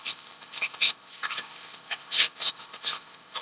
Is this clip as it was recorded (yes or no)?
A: no